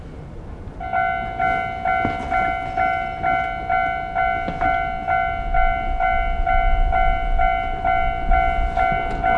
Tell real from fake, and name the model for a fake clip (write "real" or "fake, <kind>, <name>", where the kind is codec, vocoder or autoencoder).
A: real